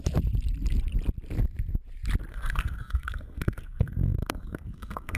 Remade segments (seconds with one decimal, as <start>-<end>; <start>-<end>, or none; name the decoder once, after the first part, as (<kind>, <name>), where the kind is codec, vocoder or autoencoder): 2.3-5.2 (codec, SNAC)